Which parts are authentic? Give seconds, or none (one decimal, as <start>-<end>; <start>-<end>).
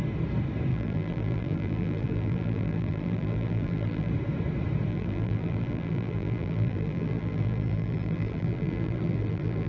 0.0-0.7; 4.1-4.9